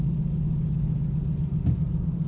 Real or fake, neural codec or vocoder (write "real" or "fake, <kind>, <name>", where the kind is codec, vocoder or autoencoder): real